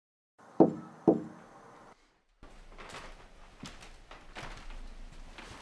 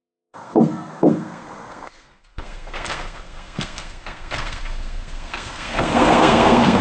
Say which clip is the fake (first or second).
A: second